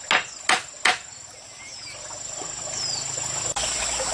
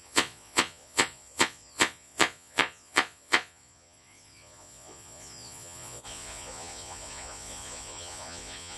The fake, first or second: second